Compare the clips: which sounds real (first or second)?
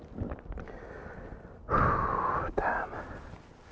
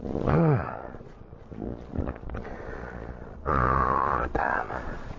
first